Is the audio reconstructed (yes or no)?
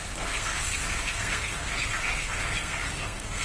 yes